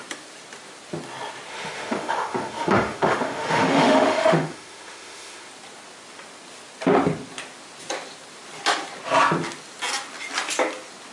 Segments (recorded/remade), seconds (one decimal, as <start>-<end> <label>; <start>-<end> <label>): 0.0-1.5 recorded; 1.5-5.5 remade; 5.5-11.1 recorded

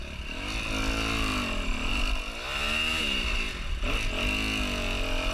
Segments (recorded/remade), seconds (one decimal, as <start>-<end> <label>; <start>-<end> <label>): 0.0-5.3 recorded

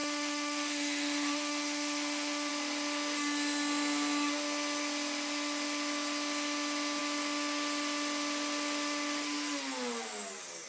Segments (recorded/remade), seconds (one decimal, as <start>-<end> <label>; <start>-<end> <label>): 0.0-2.5 remade; 2.5-10.7 recorded